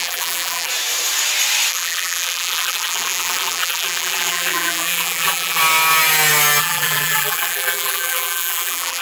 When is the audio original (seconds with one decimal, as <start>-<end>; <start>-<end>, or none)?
0.7-1.7; 5.6-6.6